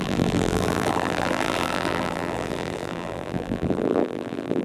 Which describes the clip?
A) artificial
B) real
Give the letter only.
A